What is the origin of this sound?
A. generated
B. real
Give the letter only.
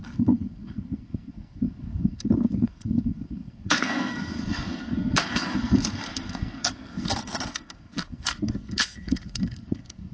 A